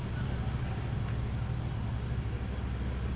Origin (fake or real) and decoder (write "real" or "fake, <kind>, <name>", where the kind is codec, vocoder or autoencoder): real